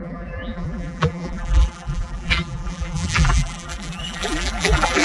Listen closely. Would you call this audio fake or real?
fake